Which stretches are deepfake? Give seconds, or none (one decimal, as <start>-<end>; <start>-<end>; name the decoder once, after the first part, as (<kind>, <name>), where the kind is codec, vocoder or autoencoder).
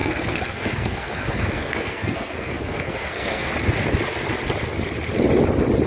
0.0-3.5 (codec, SNAC)